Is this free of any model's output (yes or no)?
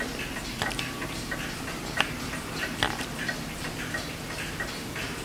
no